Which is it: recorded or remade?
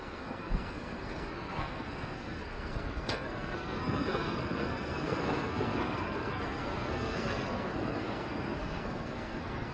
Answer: remade